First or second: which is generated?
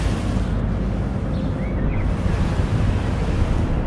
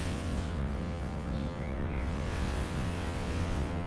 second